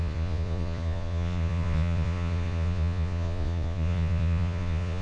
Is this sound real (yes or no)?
no